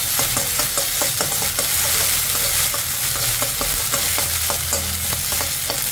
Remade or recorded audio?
recorded